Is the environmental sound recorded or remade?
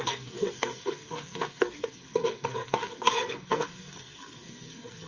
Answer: remade